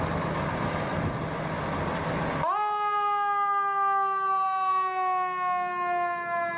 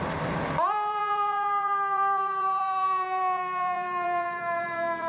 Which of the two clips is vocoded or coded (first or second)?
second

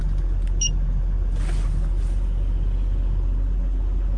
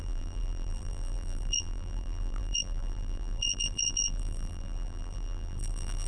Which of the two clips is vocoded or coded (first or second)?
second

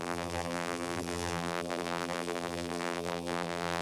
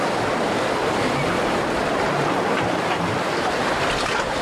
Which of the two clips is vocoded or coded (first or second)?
first